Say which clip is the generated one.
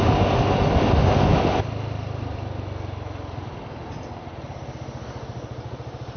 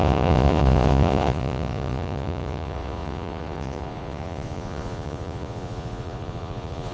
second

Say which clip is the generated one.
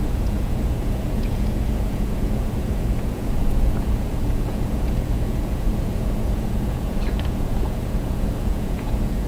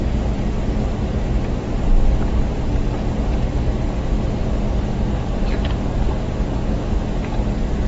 first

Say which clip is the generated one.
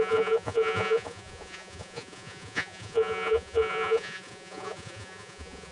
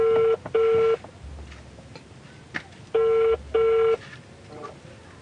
first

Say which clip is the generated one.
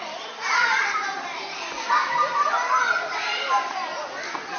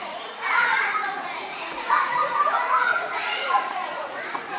second